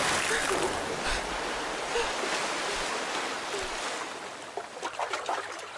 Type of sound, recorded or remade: recorded